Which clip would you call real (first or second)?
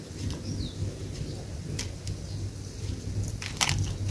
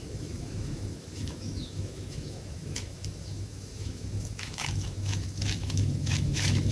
first